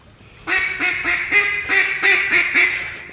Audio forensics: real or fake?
real